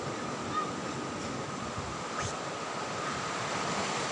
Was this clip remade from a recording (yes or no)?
no